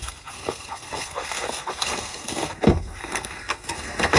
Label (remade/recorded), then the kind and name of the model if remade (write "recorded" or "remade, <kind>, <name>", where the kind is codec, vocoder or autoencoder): remade, codec, SNAC